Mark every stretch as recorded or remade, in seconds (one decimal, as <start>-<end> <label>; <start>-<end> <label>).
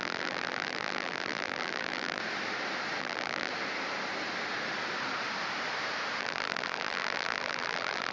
0.0-2.2 remade; 2.2-3.0 recorded; 3.0-3.5 remade; 3.5-6.2 recorded; 6.2-8.1 remade